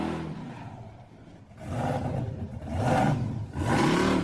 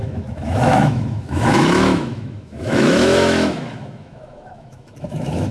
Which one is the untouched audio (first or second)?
first